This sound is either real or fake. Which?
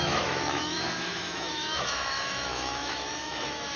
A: fake